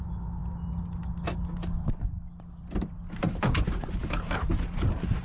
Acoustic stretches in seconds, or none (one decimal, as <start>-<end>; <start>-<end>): 0.0-5.2